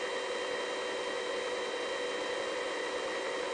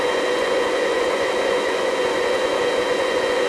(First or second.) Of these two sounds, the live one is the first